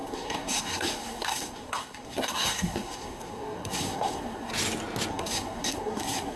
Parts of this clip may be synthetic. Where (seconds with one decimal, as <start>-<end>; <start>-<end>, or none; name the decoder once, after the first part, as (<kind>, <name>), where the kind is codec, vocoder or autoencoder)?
0.0-4.5 (codec, SNAC); 5.1-6.4